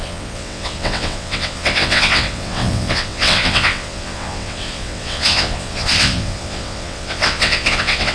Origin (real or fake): fake